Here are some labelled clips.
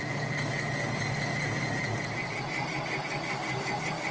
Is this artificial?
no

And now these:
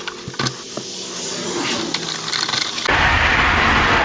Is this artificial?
no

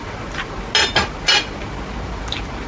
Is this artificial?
no